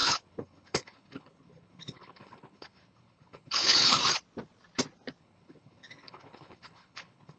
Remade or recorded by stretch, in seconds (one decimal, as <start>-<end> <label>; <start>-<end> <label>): 0.0-4.0 remade; 4.0-5.2 recorded; 5.2-7.4 remade